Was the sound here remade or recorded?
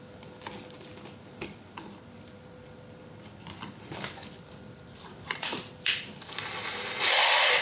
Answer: remade